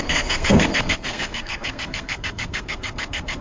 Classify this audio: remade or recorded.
remade